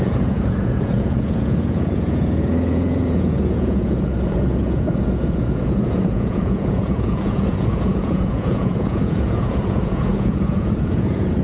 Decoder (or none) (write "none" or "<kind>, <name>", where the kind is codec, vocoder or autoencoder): vocoder, Vocos